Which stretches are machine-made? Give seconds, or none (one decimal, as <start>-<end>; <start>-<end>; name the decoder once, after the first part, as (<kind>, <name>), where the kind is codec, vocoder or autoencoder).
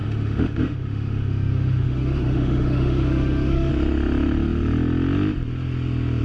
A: 0.0-3.7 (autoencoder, DAC-VAE)